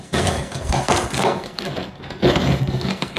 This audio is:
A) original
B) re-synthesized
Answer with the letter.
B